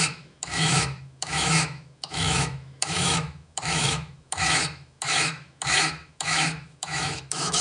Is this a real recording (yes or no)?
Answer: no